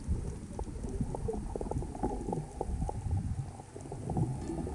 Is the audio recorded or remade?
recorded